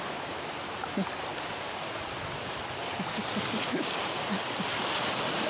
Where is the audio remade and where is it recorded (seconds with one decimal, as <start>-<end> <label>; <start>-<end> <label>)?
0.0-5.5 recorded